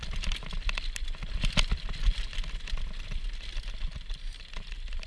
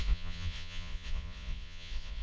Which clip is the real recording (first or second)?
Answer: first